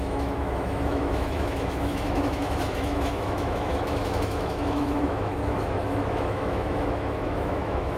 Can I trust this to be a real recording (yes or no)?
no